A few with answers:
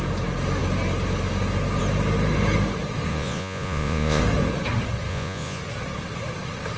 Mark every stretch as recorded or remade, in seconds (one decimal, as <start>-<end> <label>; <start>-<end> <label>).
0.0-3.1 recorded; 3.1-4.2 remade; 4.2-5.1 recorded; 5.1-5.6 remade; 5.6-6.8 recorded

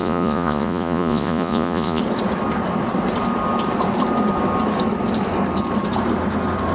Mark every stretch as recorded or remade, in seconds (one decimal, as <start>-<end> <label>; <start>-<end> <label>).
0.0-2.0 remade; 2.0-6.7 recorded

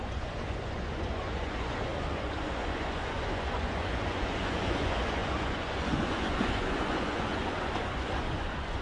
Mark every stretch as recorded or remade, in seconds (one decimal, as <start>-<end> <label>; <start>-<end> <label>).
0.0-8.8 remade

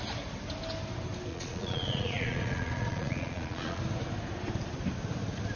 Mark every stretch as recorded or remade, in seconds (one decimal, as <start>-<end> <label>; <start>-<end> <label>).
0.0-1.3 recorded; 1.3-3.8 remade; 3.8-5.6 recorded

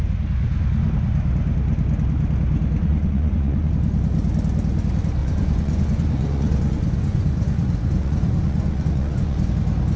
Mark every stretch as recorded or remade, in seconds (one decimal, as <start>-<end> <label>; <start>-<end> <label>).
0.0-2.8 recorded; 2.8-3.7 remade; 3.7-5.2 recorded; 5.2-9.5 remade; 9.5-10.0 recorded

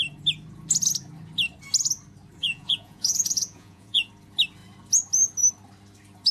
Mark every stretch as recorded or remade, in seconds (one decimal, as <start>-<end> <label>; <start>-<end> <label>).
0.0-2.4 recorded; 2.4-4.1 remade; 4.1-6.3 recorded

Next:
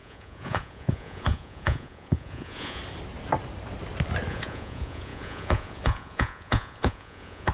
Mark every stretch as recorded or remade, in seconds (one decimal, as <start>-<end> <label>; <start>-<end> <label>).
0.0-2.8 remade; 2.8-4.3 recorded; 4.3-7.5 remade